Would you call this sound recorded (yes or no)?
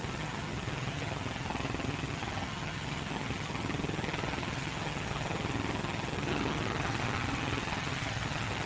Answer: no